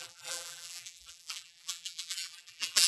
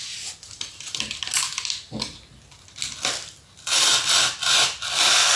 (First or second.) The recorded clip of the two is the second